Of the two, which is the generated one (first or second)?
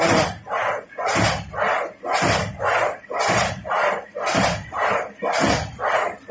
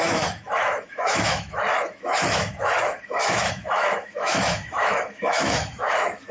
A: second